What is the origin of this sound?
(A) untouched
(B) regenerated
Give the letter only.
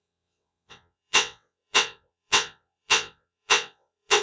B